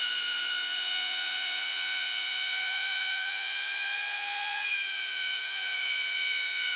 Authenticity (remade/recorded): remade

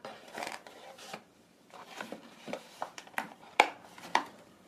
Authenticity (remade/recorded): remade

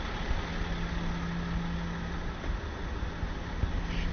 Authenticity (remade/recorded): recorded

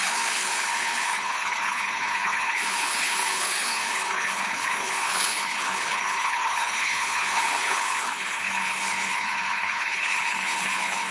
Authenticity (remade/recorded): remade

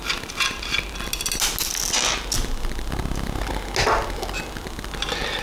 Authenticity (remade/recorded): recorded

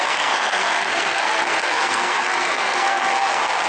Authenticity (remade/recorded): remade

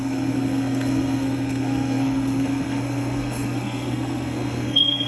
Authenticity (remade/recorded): remade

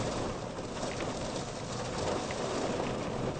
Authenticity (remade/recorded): recorded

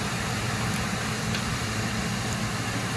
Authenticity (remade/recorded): recorded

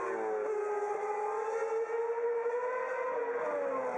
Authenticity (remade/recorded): recorded